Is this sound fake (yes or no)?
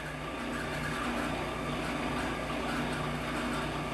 no